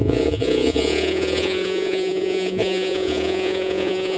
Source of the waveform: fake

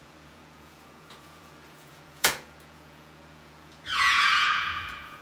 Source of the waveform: fake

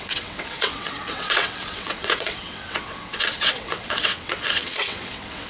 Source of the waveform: fake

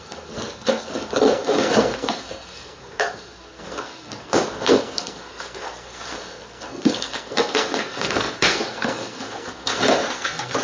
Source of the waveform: fake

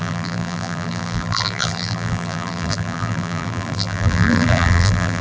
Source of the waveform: fake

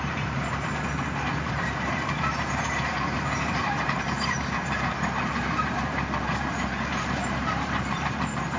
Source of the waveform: fake